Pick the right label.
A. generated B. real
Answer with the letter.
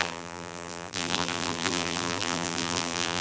A